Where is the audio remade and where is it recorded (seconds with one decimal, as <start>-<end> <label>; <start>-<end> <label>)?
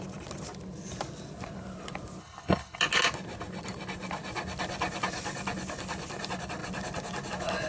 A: 0.0-2.2 recorded; 2.2-2.8 remade; 2.8-7.7 recorded